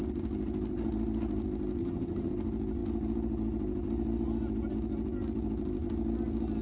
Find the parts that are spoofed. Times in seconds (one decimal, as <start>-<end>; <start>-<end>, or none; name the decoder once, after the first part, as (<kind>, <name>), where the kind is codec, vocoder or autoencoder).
1.8-2.3 (vocoder, HiFi-GAN)